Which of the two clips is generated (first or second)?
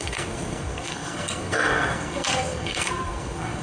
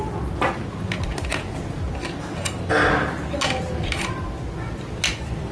first